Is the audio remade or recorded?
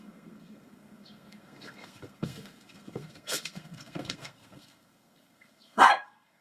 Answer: remade